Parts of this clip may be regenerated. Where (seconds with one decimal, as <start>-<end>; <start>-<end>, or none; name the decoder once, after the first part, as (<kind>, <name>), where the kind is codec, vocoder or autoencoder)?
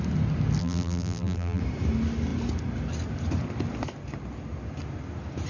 0.6-1.6 (vocoder, BigVGAN v2)